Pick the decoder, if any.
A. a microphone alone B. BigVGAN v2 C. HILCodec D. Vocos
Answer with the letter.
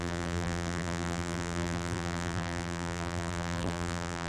B